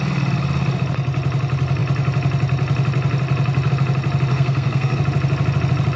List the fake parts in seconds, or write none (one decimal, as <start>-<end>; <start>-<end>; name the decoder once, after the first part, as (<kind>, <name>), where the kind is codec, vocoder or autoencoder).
4.3-5.0 (codec, SNAC)